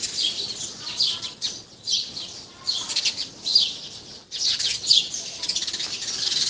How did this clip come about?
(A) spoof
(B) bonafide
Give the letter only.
B